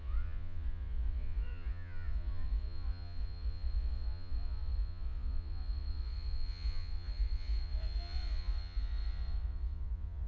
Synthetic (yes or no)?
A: yes